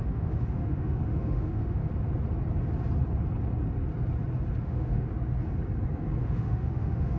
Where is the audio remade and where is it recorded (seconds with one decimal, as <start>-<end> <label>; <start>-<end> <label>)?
0.0-1.8 remade; 1.8-4.6 recorded; 4.6-5.1 remade; 5.1-6.2 recorded; 6.2-7.2 remade

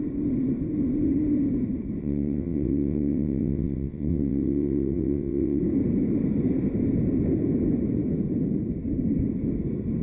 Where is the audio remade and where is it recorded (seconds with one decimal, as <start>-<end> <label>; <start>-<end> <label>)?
0.0-2.0 recorded; 2.0-5.6 remade; 5.6-10.0 recorded

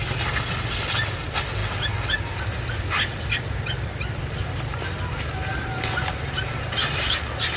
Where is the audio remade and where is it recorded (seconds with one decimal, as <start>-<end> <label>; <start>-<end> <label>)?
0.0-7.6 recorded

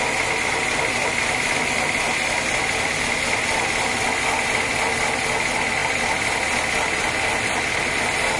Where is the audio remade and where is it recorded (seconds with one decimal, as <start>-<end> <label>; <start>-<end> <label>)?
0.0-8.4 recorded

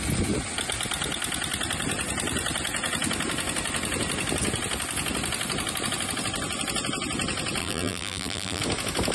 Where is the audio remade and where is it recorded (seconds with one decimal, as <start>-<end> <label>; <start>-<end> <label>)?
0.0-7.6 recorded; 7.6-8.6 remade; 8.6-9.1 recorded

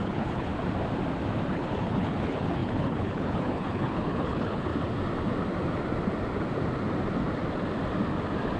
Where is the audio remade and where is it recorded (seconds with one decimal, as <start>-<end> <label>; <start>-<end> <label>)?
0.0-0.5 remade; 0.5-1.5 recorded; 1.5-4.7 remade; 4.7-8.6 recorded

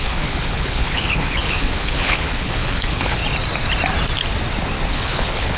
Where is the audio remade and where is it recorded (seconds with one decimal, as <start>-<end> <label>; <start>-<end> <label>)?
0.0-3.2 remade; 3.2-4.9 recorded; 4.9-5.6 remade

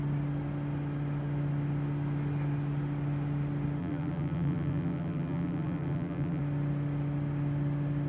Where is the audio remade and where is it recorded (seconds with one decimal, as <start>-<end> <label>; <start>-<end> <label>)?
0.0-3.8 recorded; 3.8-6.4 remade; 6.4-8.1 recorded